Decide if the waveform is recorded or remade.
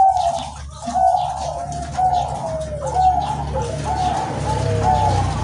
recorded